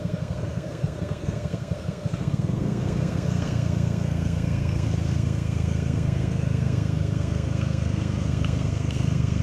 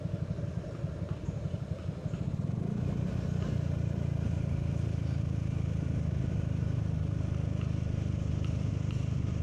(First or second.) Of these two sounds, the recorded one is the second